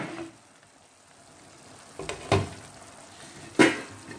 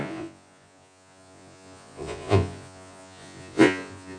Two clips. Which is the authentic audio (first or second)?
first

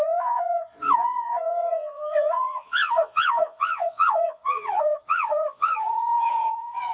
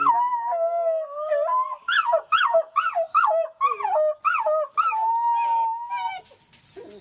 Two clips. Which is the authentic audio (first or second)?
second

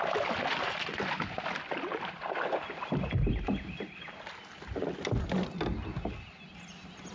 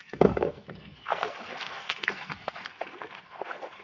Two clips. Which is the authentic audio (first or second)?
first